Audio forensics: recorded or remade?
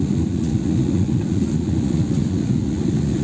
remade